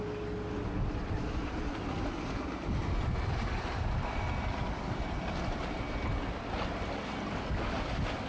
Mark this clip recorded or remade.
recorded